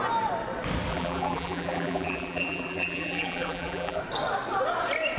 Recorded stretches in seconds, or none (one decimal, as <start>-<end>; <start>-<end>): 0.0-0.9; 4.0-5.2